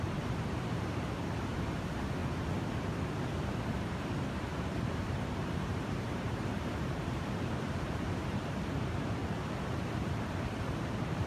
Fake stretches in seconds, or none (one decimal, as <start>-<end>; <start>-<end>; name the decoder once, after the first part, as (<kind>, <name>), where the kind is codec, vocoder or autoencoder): 0.0-2.2 (vocoder, BigVGAN v2); 3.4-9.2; 10.6-11.3